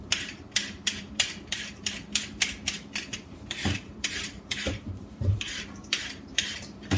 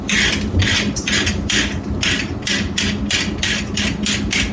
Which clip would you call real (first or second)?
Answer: second